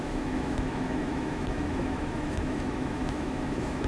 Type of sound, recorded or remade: remade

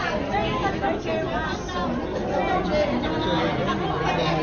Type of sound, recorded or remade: recorded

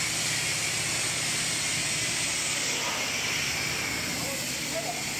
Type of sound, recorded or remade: recorded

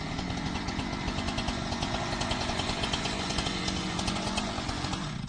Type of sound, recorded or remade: remade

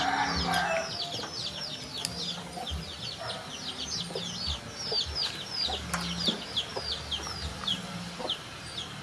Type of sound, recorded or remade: recorded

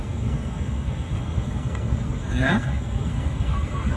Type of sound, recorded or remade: remade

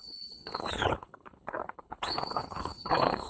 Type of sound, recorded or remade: remade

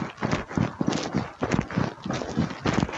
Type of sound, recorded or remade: recorded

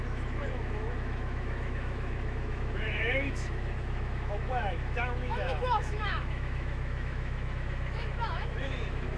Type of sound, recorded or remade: remade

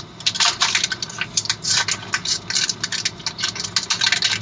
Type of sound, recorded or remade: recorded